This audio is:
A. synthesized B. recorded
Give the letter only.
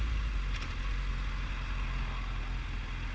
B